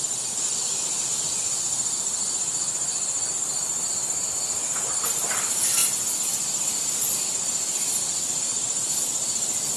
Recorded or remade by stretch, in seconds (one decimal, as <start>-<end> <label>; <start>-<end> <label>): 0.0-2.2 remade; 2.2-4.8 recorded; 4.8-9.8 remade